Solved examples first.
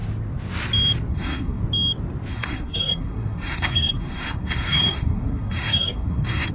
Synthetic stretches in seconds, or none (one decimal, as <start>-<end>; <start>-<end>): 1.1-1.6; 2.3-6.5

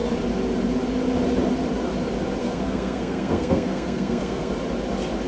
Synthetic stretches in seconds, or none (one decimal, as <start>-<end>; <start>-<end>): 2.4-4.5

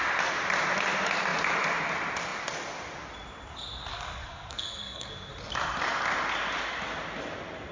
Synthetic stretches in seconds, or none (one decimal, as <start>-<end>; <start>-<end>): 3.9-5.3

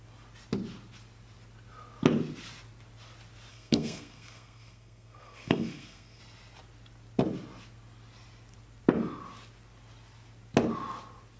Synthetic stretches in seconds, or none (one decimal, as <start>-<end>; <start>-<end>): 3.5-6.2